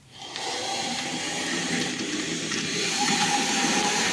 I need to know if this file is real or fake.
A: fake